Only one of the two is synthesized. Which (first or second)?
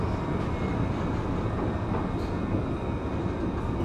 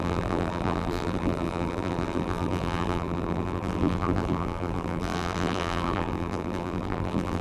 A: second